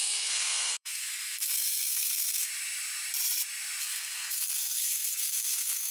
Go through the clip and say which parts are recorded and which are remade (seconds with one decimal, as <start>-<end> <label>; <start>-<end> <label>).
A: 0.0-2.5 remade; 2.5-3.8 recorded; 3.8-5.9 remade